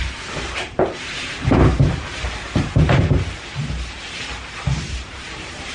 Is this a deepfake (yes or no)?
yes